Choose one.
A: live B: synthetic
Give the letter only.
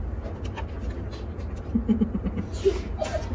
A